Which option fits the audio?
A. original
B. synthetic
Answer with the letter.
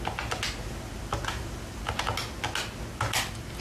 A